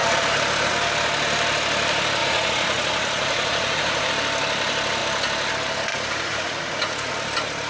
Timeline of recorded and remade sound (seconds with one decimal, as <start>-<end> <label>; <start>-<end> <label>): 0.0-2.2 recorded; 2.2-4.1 remade; 4.1-5.9 recorded; 5.9-7.1 remade; 7.1-7.7 recorded